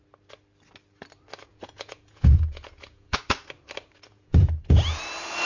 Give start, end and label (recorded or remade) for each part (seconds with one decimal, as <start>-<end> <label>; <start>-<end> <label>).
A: 0.0-1.5 recorded; 1.5-3.2 remade; 3.2-4.1 recorded; 4.1-5.0 remade; 5.0-5.5 recorded

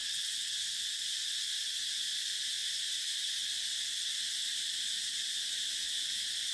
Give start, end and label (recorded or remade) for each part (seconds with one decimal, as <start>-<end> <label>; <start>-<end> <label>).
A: 0.0-0.5 remade; 0.5-6.5 recorded